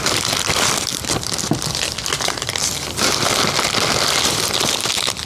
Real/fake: real